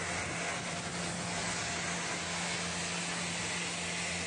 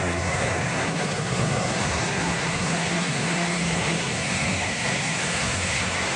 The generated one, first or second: second